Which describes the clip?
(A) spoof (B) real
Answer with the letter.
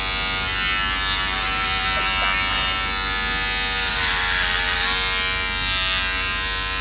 B